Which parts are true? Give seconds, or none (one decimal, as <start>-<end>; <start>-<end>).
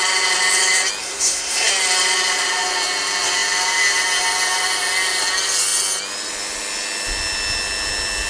0.0-1.0; 1.7-8.3